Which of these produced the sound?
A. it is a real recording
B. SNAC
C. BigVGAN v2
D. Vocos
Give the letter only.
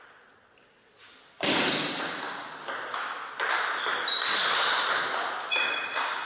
A